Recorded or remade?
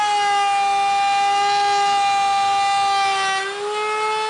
recorded